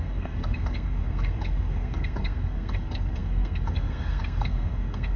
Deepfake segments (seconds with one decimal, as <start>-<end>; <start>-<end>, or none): 0.0-5.2